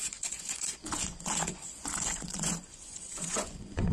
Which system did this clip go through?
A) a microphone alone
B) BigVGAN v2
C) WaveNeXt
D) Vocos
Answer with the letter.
D